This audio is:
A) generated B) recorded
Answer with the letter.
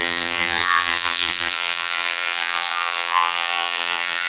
A